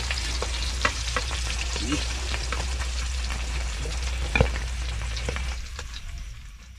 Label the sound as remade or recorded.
remade